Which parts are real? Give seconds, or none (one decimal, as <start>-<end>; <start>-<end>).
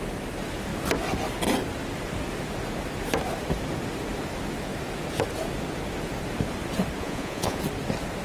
0.0-7.0; 7.6-8.2